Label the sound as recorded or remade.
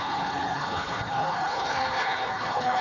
remade